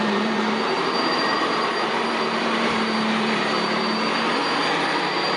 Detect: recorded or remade remade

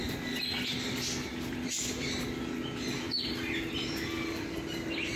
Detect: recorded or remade recorded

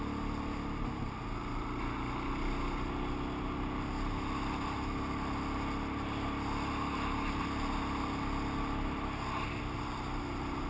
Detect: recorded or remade recorded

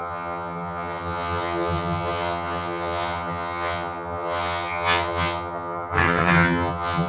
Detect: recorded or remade remade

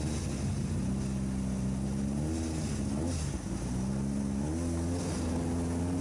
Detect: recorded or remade recorded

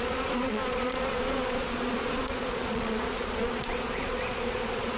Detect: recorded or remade remade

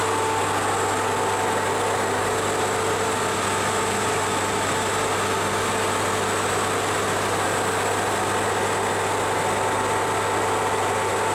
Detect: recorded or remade recorded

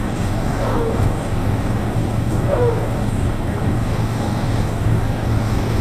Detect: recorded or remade remade